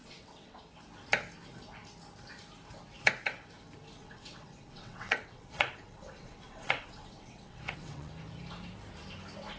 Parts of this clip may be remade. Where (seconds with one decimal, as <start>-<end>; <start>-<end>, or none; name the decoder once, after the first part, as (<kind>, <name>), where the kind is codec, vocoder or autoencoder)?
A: 0.0-0.6 (vocoder, WaveNeXt); 4.0-8.1